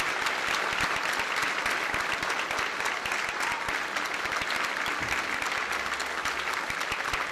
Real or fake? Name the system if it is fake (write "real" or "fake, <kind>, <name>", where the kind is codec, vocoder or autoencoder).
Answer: real